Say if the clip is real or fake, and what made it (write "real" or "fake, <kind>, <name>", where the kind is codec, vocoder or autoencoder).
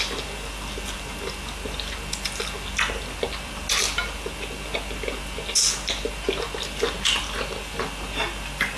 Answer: real